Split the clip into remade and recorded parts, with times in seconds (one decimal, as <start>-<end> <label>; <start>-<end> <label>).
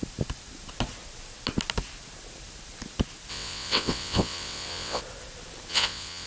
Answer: 0.0-3.3 recorded; 3.3-5.0 remade; 5.0-5.7 recorded; 5.7-6.3 remade